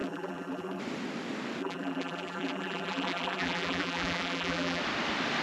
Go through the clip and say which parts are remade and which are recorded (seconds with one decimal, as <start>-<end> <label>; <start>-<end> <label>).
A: 0.0-0.8 remade; 0.8-1.6 recorded; 1.6-4.8 remade; 4.8-5.4 recorded